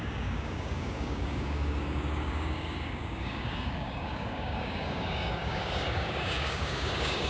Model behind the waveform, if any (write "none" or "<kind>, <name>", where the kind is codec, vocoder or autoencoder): codec, DAC